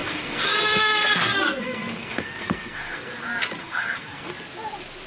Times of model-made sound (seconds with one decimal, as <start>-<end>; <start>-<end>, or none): 0.0-3.1; 3.6-4.3